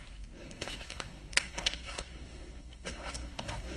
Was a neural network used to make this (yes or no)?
yes